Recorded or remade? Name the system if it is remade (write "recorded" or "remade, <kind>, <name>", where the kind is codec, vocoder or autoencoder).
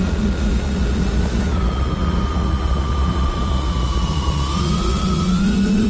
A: remade, vocoder, Vocos